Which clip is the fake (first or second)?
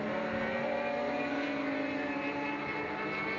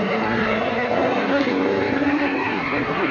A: second